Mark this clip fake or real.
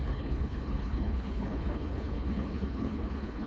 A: fake